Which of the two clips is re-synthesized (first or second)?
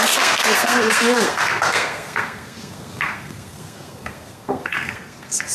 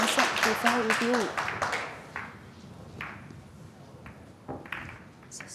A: first